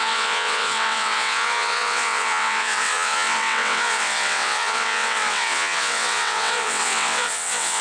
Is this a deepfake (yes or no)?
yes